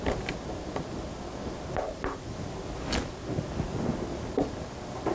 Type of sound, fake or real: real